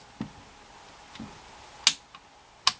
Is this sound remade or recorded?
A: recorded